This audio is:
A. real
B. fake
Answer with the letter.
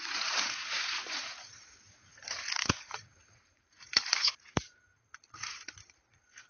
B